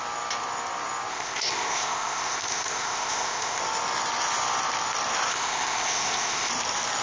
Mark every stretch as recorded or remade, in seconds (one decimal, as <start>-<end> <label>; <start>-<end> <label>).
0.0-1.1 recorded; 1.1-3.6 remade; 3.6-5.3 recorded; 5.3-6.5 remade; 6.5-7.0 recorded